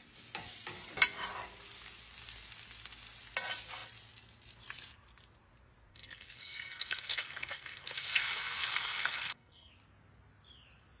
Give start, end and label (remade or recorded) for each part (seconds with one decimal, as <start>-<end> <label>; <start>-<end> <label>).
0.0-5.9 recorded; 5.9-9.7 remade; 9.7-11.0 recorded